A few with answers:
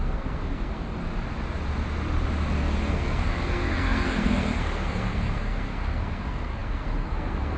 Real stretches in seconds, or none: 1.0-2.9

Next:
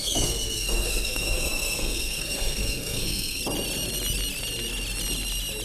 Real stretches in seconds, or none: 3.4-5.6

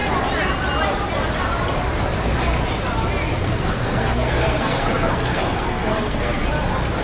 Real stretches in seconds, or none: 0.0-3.4; 6.4-7.0

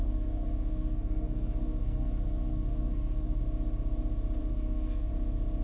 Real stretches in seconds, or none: 3.4-4.4; 5.1-5.6